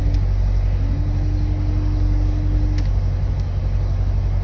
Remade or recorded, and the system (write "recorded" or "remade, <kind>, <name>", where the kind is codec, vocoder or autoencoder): recorded